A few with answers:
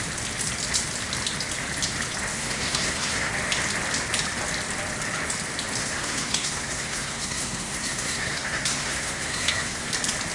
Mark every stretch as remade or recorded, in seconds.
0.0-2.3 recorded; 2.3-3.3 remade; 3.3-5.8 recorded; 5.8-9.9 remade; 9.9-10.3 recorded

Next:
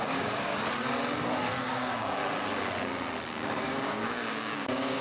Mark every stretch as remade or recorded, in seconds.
0.0-0.5 remade; 0.5-1.6 recorded; 1.6-2.2 remade; 2.2-3.3 recorded; 3.3-5.0 remade

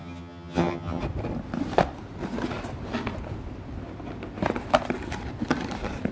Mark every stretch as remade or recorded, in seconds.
0.0-1.0 remade; 1.0-6.1 recorded

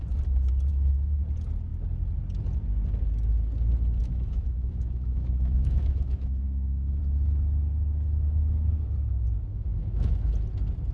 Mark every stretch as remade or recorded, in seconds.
0.0-0.7 recorded; 0.7-1.2 remade; 1.2-4.0 recorded; 4.0-7.0 remade; 7.0-9.5 recorded; 9.5-10.3 remade; 10.3-10.9 recorded

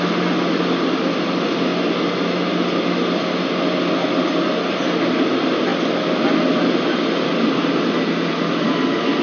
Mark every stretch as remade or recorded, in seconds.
0.0-9.2 recorded

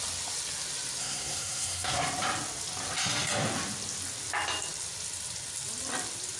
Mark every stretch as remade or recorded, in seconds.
0.0-1.0 recorded; 1.0-2.0 remade; 2.0-6.4 recorded

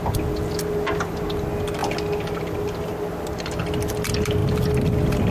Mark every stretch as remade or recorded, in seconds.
0.0-5.3 recorded

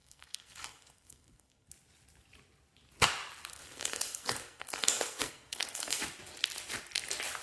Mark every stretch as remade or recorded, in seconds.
0.0-1.7 remade; 1.7-3.5 recorded; 3.5-6.0 remade; 6.0-7.4 recorded